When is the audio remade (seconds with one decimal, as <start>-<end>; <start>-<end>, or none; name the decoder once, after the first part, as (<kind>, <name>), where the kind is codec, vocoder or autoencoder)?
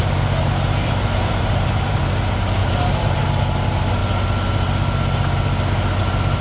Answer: 0.8-2.0 (vocoder, BigVGAN v2); 2.6-3.2